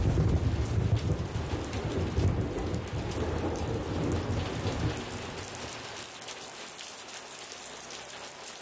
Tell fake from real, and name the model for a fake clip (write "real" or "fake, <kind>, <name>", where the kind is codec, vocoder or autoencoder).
real